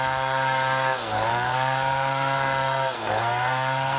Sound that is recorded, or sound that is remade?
remade